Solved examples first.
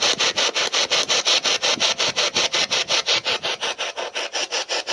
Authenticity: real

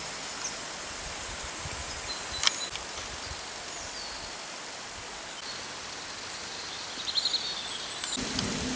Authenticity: real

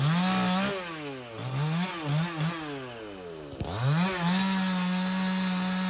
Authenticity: real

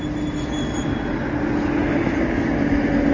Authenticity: real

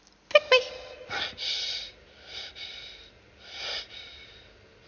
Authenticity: real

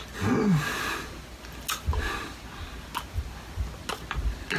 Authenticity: real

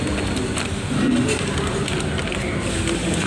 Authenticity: real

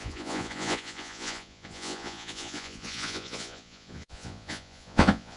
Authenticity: fake